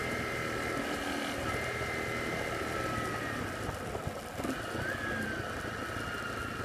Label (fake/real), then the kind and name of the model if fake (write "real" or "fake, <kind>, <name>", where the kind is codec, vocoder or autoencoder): real